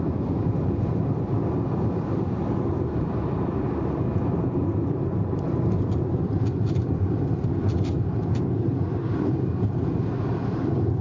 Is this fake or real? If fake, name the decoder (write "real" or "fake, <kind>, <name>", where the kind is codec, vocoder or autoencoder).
fake, vocoder, BigVGAN v2